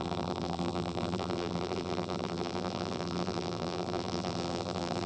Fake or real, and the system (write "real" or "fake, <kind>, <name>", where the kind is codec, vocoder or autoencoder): fake, vocoder, BigVGAN v2